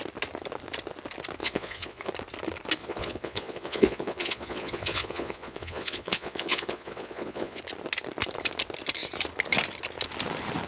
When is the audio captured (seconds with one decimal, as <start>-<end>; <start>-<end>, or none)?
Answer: 0.0-1.4; 2.1-2.8; 7.6-10.7